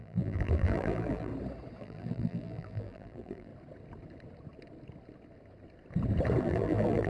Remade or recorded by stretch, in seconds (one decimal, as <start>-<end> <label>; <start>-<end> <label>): 0.0-1.3 remade; 1.3-1.8 recorded; 1.8-3.5 remade; 3.5-6.4 recorded; 6.4-7.1 remade